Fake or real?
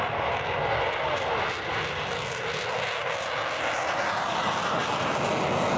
real